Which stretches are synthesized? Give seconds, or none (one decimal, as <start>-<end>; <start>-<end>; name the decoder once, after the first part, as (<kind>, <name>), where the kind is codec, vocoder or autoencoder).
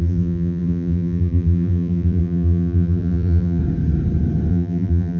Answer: 0.0-3.6 (vocoder, BigVGAN v2); 4.5-5.2